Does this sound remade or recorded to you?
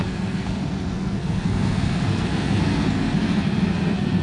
remade